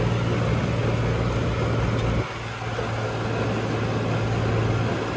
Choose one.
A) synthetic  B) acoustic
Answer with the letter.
B